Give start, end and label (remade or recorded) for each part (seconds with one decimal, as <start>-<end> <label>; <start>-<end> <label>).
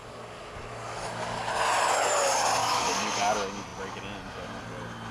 0.0-1.5 remade; 1.5-2.6 recorded; 2.6-3.2 remade; 3.2-5.1 recorded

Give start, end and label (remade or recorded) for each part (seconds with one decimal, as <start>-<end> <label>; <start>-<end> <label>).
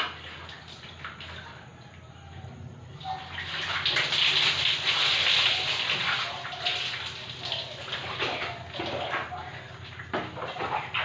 0.0-11.0 recorded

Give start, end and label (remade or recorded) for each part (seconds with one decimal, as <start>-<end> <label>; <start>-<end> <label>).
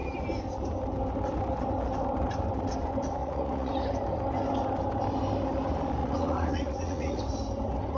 0.0-3.2 recorded; 3.2-3.7 remade; 3.7-6.0 recorded; 6.0-7.2 remade; 7.2-8.0 recorded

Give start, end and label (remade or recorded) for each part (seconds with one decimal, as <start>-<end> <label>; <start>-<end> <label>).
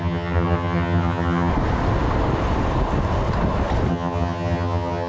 0.0-1.5 remade; 1.5-3.9 recorded; 3.9-5.1 remade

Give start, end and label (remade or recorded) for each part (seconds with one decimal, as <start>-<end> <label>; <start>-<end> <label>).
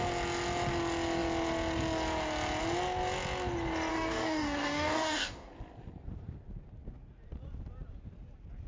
0.0-3.9 recorded; 3.9-5.5 remade; 5.5-8.7 recorded